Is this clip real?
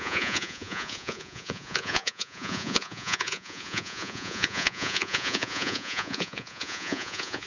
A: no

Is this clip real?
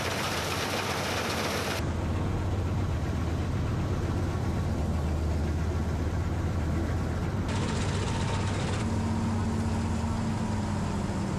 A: yes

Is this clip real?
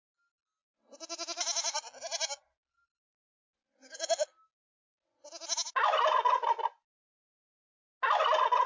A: yes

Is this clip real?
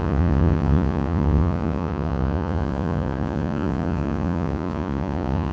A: no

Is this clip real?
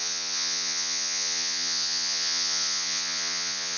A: no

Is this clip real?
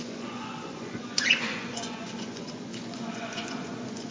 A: no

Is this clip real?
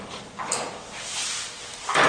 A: yes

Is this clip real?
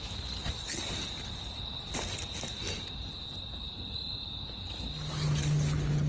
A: yes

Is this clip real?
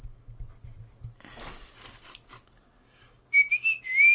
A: yes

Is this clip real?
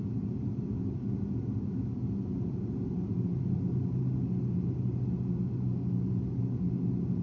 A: yes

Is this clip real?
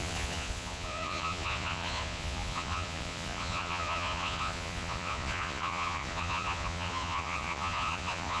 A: no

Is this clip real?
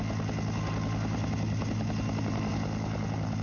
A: yes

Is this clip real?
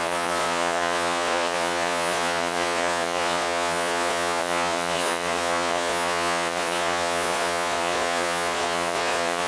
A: no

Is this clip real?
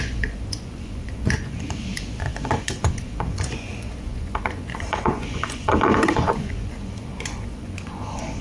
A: no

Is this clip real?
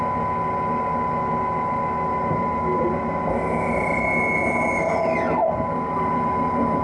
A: yes